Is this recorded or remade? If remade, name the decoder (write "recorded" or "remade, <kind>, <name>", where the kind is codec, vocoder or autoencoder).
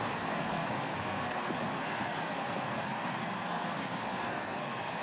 remade, codec, SNAC